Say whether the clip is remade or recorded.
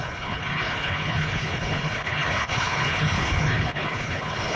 remade